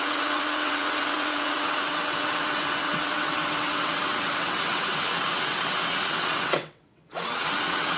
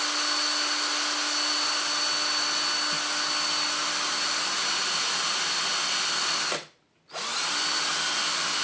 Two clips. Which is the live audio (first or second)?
second